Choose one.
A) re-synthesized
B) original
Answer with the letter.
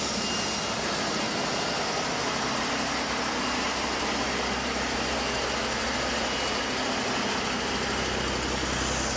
B